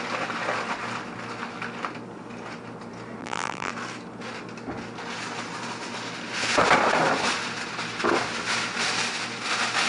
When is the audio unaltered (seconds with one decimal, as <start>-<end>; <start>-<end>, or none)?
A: 0.0-3.2; 3.7-9.9